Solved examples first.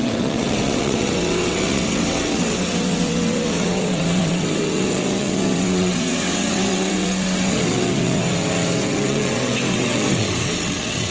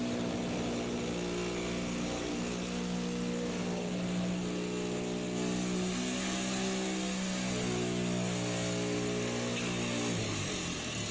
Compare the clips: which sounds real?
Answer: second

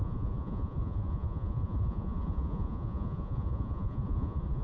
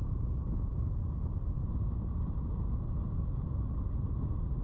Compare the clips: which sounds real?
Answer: second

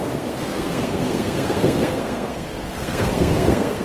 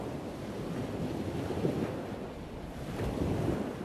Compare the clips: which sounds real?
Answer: second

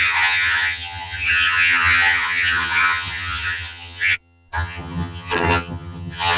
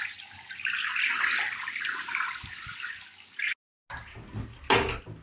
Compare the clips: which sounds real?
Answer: second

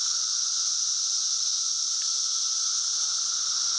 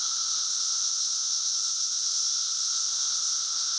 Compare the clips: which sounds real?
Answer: first